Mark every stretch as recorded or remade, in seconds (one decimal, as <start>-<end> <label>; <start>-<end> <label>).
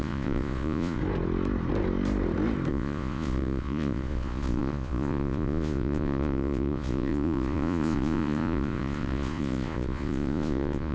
0.0-1.0 remade; 1.0-2.7 recorded; 2.7-10.9 remade